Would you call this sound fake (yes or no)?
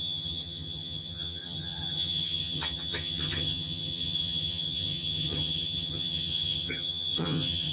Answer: yes